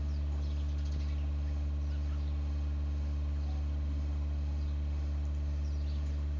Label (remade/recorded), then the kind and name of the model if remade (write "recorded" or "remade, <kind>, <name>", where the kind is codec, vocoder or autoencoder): recorded